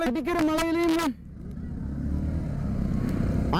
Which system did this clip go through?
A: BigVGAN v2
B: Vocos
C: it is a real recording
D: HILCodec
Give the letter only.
C